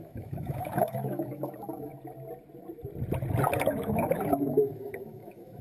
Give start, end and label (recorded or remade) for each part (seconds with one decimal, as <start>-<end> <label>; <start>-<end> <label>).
0.0-1.9 remade; 1.9-3.6 recorded; 3.6-5.6 remade